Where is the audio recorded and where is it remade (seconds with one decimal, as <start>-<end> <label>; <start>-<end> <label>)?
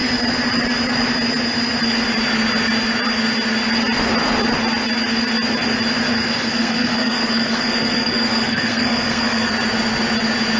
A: 0.0-6.1 recorded; 6.1-9.5 remade; 9.5-10.6 recorded